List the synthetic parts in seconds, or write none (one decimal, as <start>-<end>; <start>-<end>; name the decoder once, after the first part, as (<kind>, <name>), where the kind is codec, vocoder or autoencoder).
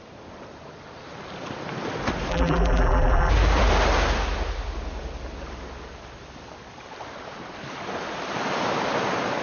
2.3-3.3 (vocoder, BigVGAN v2)